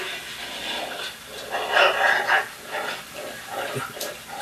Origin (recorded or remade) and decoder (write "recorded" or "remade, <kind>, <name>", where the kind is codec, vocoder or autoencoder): recorded